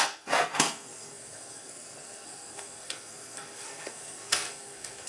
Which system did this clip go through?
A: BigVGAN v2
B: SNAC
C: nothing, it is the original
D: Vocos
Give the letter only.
B